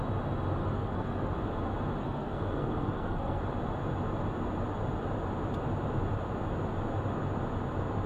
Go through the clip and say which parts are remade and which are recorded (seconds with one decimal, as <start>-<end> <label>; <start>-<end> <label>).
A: 0.0-0.6 recorded; 0.6-1.3 remade; 1.3-2.0 recorded; 2.0-3.4 remade; 3.4-8.1 recorded